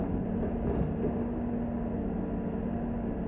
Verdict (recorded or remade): recorded